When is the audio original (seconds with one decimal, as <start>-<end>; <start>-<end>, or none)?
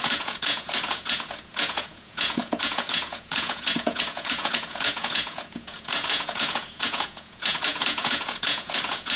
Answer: none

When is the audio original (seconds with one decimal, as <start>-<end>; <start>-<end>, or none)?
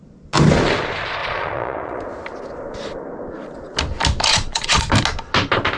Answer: 0.0-1.2; 2.0-4.3; 4.9-5.8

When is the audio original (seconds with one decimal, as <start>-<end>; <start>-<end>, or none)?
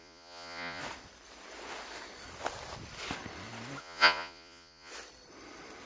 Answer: 0.8-3.8; 4.9-5.9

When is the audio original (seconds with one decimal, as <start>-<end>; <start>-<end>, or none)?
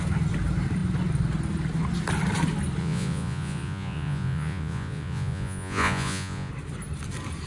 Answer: 0.0-2.8; 6.5-7.5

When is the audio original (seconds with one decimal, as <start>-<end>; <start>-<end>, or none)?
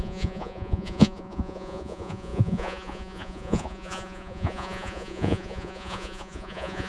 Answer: none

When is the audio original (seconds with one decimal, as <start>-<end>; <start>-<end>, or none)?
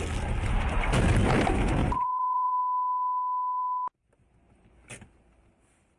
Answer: 0.0-1.8; 2.5-6.0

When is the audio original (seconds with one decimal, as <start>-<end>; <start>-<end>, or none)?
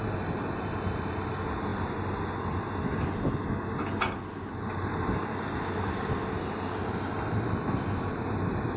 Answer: 0.0-8.8